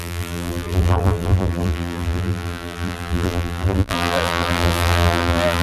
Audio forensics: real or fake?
fake